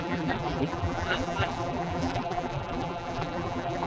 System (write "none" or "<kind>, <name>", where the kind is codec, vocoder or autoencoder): vocoder, BigVGAN v2